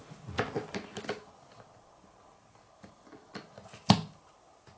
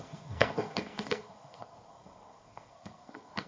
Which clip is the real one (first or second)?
first